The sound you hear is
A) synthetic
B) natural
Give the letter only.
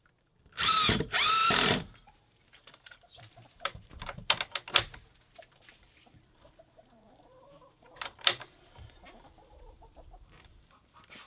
A